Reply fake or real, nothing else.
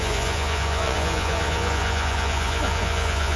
fake